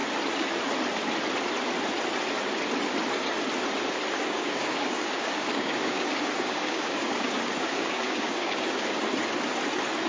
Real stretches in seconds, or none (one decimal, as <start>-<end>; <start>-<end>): 0.0-4.2; 8.9-10.1